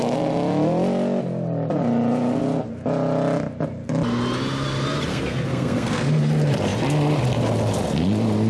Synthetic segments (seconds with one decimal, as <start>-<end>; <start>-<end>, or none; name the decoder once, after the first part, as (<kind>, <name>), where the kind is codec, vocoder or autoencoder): 5.1-6.2 (codec, SNAC)